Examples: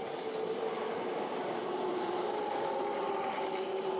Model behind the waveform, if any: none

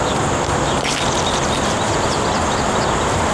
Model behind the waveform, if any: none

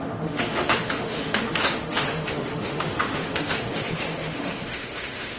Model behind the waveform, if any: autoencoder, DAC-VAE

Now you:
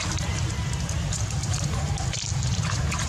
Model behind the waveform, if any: none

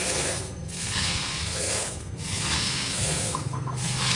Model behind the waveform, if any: codec, SNAC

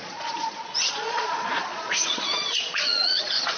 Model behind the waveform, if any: vocoder, Vocos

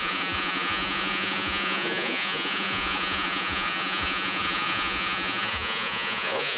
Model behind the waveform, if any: vocoder, Vocos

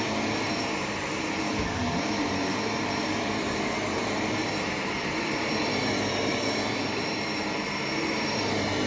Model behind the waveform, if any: vocoder, BigVGAN v2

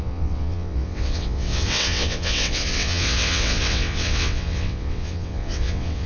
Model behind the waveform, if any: vocoder, WaveNeXt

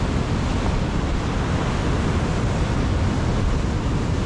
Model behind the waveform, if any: none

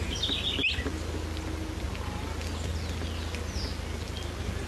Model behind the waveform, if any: none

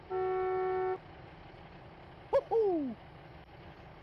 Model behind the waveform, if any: none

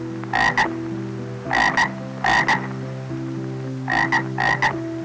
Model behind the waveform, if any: none